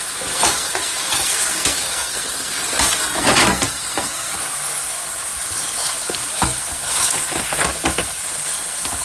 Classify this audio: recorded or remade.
remade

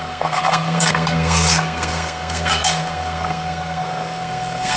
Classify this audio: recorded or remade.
remade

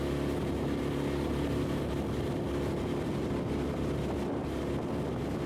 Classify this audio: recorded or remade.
recorded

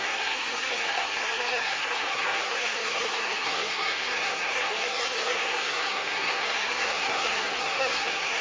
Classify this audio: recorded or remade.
remade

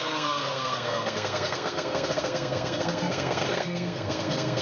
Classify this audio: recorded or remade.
remade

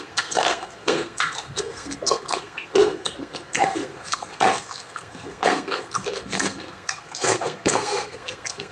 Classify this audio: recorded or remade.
remade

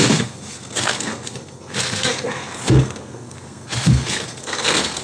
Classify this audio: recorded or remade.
remade